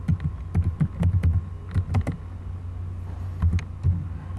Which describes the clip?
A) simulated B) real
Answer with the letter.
B